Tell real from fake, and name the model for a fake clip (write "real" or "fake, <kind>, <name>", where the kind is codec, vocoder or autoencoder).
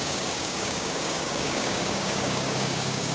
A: fake, codec, DAC